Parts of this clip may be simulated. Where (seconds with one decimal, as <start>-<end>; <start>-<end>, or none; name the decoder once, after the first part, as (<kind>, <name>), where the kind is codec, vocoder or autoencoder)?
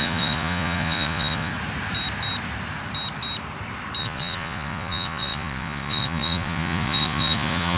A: 0.0-1.5 (vocoder, Vocos); 4.0-7.8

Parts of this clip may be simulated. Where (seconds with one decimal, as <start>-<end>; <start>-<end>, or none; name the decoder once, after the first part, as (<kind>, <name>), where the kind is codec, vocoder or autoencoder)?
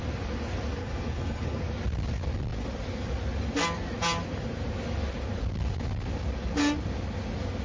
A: 0.8-1.6 (codec, HILCodec)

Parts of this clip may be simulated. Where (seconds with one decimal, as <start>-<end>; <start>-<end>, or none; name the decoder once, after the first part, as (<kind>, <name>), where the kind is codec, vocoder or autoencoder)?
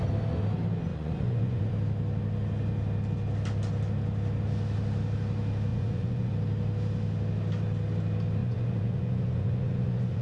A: 0.9-1.7 (vocoder, Vocos); 5.7-6.3; 8.4-10.2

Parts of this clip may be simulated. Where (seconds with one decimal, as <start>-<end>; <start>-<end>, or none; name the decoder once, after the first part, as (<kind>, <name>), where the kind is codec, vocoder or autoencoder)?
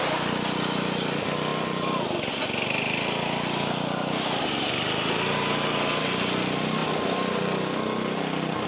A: none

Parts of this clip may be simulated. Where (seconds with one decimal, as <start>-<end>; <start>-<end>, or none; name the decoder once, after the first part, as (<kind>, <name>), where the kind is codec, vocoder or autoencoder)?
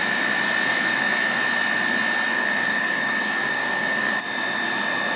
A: 0.7-1.4 (codec, DAC); 2.3-4.2